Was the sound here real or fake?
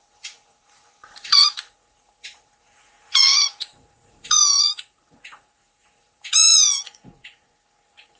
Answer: fake